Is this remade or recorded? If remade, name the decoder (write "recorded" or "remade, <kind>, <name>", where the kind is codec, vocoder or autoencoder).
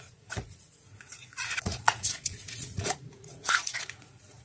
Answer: remade, vocoder, Vocos